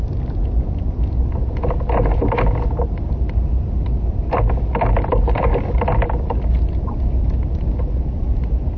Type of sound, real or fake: real